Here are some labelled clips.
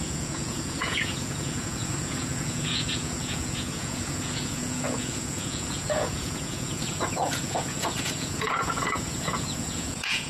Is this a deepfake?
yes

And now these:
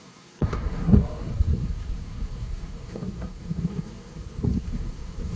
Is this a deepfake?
yes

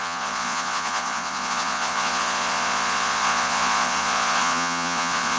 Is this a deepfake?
yes